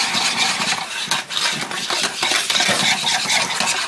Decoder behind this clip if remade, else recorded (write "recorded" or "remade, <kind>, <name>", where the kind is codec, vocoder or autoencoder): recorded